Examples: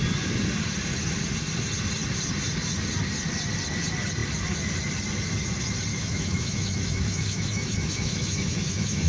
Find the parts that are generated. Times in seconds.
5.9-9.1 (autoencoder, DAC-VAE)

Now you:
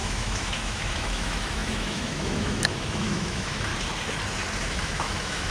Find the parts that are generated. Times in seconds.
0.0-3.7 (autoencoder, DAC-VAE); 4.6-5.5

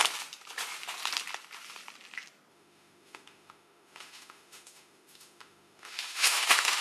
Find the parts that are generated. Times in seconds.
2.5-6.8 (autoencoder, DAC-VAE)

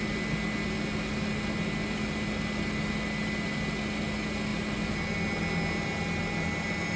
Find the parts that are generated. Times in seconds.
none